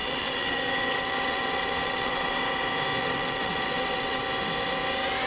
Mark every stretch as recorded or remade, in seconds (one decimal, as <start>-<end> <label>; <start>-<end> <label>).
0.0-2.4 remade; 2.4-3.0 recorded; 3.0-4.2 remade; 4.2-5.3 recorded